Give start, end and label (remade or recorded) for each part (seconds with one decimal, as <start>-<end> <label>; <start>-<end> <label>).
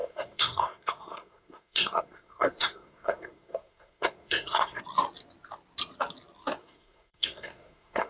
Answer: 0.0-4.8 remade; 4.8-6.6 recorded; 6.6-8.1 remade